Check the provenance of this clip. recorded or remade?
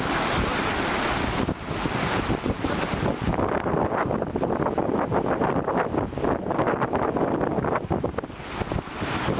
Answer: recorded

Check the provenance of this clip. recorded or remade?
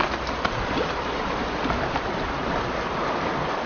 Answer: recorded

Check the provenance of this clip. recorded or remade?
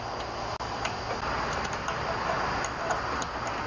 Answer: recorded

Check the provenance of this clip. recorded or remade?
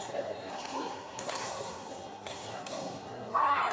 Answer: remade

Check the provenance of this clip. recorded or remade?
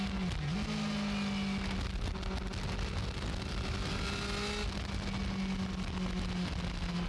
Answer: recorded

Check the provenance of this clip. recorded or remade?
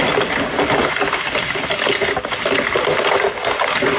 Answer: recorded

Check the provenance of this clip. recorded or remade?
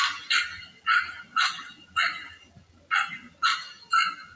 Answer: recorded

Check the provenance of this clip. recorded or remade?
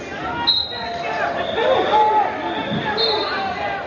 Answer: recorded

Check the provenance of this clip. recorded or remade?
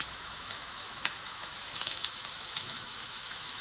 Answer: remade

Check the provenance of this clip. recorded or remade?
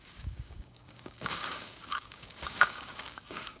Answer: remade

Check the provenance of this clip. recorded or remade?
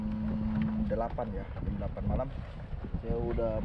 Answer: recorded